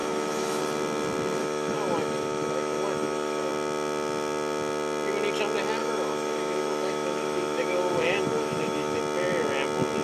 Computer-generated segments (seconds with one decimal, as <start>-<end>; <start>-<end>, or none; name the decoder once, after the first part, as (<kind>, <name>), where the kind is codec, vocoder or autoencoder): 0.0-0.6 (autoencoder, DAC-VAE); 1.4-3.5; 5.8-9.0